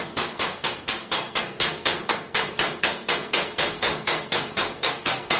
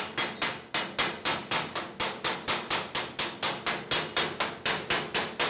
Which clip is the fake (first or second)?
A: first